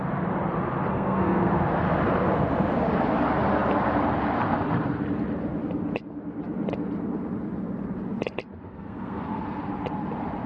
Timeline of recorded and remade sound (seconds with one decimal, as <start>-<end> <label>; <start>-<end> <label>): 0.0-0.9 recorded; 0.9-1.5 remade; 1.5-8.7 recorded; 8.7-9.4 remade; 9.4-10.5 recorded